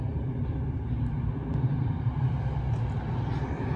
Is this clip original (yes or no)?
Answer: yes